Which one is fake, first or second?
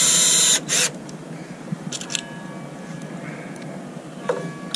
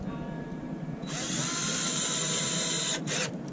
second